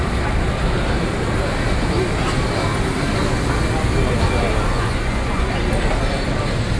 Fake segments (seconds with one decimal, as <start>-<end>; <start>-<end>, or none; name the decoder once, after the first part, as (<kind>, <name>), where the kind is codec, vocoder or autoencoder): 4.7-5.5 (vocoder, Vocos)